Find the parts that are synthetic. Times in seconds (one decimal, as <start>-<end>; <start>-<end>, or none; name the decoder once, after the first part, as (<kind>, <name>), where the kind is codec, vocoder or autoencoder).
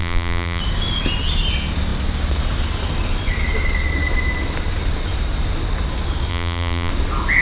0.0-0.6 (vocoder, BigVGAN v2); 6.3-6.9